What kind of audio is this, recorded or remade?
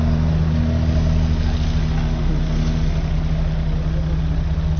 recorded